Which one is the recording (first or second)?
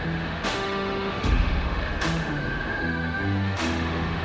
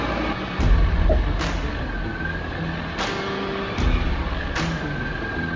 second